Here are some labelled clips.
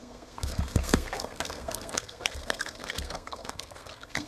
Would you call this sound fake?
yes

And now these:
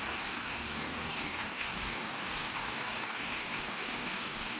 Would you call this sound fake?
yes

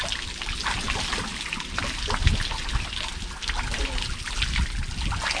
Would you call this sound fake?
no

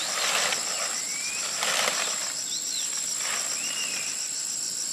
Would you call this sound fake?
yes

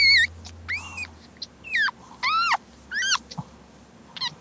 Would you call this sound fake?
no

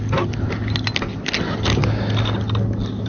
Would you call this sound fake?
no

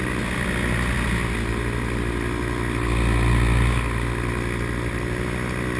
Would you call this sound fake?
no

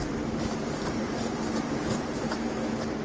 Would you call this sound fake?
yes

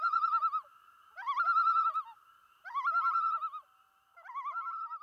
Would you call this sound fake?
no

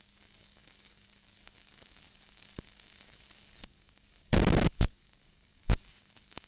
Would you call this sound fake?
yes